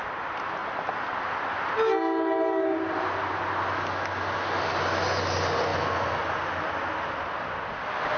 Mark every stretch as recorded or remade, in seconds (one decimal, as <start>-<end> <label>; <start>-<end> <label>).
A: 0.0-8.2 recorded

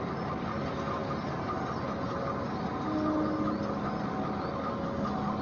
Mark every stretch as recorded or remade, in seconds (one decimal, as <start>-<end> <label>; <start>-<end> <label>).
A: 0.0-5.4 recorded